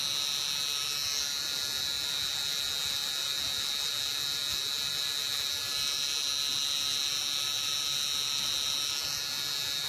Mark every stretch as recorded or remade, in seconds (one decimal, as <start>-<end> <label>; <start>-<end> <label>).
0.0-9.9 recorded